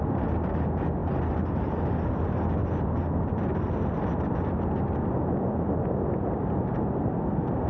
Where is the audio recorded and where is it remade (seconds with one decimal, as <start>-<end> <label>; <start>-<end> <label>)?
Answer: 0.0-7.7 recorded